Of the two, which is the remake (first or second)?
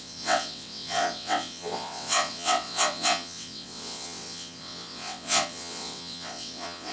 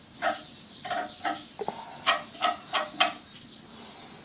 first